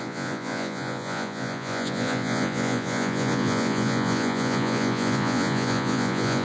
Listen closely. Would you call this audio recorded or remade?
remade